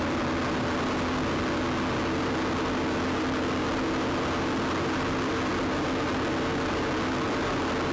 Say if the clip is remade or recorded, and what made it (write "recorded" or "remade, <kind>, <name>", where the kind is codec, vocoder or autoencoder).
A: recorded